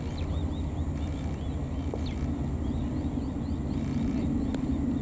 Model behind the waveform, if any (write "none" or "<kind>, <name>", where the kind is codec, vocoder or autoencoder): none